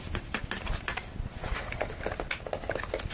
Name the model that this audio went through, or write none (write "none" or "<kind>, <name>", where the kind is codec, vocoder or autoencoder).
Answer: none